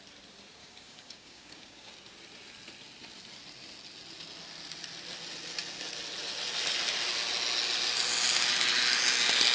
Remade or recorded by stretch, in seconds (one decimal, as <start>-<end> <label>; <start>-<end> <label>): 0.0-0.6 recorded; 0.6-1.9 remade; 1.9-9.5 recorded